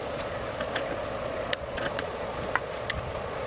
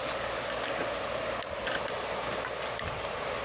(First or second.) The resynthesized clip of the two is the first